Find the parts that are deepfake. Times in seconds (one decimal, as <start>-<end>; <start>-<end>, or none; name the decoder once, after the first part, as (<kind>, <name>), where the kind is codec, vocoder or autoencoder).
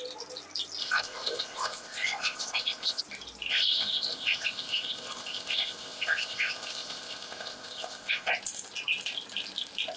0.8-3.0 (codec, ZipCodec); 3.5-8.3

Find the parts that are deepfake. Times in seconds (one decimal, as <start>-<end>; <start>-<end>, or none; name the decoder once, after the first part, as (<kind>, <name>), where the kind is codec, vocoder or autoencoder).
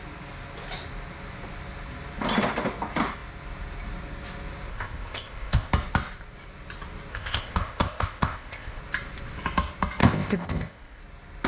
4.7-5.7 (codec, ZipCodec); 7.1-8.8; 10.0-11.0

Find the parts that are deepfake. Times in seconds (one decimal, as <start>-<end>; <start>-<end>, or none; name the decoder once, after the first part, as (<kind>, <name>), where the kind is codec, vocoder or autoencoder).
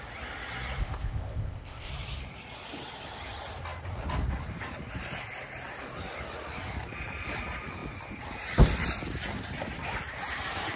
0.8-1.9 (codec, ZipCodec)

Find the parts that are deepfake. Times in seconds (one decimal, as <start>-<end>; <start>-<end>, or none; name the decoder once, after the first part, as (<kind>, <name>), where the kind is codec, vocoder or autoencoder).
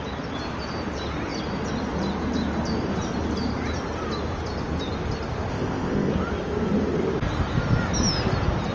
5.5-6.1 (codec, ZipCodec)